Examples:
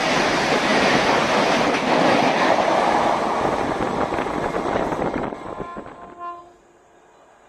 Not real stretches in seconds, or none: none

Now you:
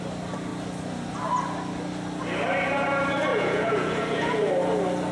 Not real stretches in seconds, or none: 3.3-4.5 (vocoder, Vocos)

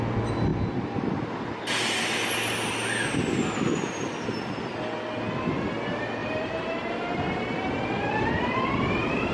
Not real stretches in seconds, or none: 6.2-9.3 (vocoder, BigVGAN v2)

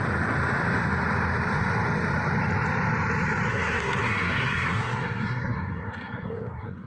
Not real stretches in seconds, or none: 3.5-6.9 (codec, SNAC)

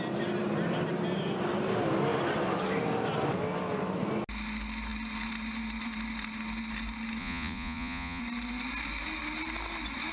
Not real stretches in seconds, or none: 7.2-8.2 (vocoder, Vocos)

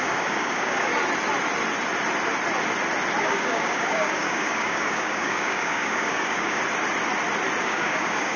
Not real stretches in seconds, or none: 0.0-0.9 (codec, DAC); 3.2-6.6; 7.6-8.4